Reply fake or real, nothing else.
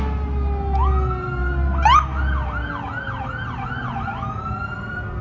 real